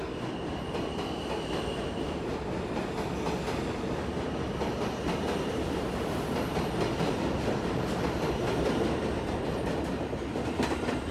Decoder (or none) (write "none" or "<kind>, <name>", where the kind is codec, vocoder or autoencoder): none